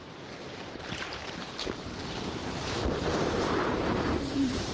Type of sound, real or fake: fake